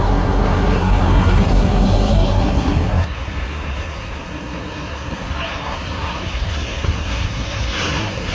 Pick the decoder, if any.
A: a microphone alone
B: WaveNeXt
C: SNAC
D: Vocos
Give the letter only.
C